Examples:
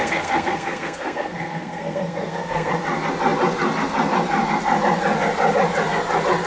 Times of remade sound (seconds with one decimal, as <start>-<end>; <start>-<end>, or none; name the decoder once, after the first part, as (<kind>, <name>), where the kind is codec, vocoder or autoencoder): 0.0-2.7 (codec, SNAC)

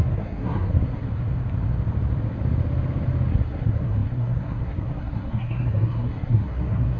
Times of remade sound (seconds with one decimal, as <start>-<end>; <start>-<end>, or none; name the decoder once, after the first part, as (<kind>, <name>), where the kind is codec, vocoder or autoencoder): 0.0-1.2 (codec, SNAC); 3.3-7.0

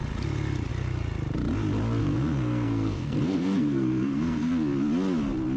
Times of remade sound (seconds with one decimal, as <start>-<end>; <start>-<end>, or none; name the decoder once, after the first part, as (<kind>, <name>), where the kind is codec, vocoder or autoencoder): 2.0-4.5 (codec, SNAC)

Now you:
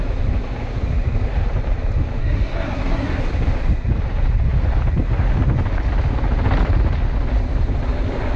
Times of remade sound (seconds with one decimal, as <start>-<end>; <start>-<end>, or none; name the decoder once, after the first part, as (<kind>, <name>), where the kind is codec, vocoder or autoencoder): 2.2-3.2 (codec, SNAC)

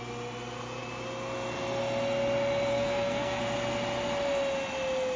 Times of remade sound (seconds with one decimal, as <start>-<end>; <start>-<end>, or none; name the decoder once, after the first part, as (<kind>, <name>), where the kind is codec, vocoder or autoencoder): 2.7-3.4 (codec, SNAC)